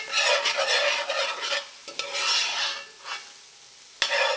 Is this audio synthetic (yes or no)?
no